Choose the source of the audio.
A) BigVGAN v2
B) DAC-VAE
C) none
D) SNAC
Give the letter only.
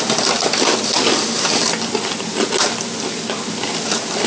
C